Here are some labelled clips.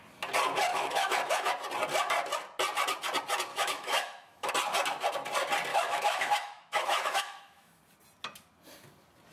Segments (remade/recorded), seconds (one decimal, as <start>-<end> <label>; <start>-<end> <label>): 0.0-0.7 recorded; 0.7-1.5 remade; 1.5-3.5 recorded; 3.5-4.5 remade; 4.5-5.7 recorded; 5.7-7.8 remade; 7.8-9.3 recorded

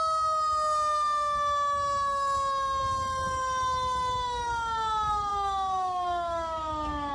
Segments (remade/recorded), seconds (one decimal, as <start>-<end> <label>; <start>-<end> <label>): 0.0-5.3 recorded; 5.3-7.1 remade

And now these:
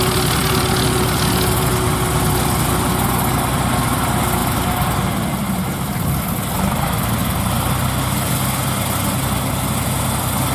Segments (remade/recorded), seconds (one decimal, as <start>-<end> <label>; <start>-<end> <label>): 0.0-10.5 recorded

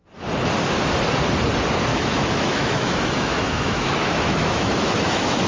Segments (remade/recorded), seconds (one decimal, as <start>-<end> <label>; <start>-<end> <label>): 0.0-1.9 recorded; 1.9-5.5 remade

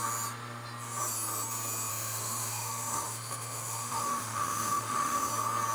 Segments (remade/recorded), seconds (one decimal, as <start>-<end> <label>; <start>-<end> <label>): 0.0-1.9 recorded; 1.9-5.3 remade; 5.3-5.7 recorded

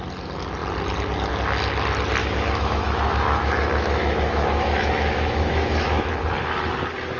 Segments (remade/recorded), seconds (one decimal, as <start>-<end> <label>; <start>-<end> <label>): 0.0-2.2 recorded; 2.2-6.1 remade; 6.1-7.2 recorded

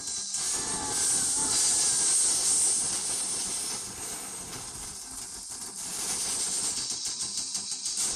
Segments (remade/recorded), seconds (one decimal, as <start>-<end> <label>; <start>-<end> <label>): 0.0-8.2 recorded

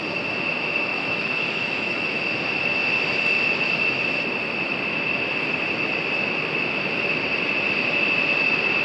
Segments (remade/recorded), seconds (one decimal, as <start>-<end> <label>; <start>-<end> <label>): 0.0-0.9 recorded; 0.9-2.2 remade; 2.2-8.8 recorded